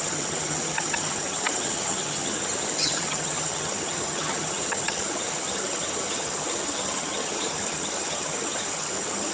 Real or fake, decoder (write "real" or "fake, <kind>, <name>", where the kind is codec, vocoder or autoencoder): fake, vocoder, HiFi-GAN